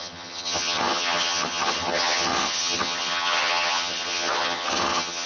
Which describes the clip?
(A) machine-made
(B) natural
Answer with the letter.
A